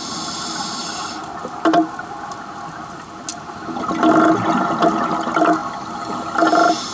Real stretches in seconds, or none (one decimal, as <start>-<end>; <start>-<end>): 0.0-3.3; 3.8-6.9